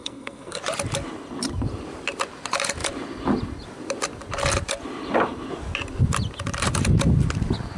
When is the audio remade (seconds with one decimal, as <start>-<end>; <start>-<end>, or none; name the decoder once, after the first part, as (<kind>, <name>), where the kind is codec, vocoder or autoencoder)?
0.0-0.6 (codec, SNAC)